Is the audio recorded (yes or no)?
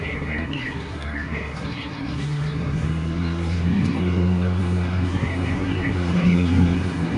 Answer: no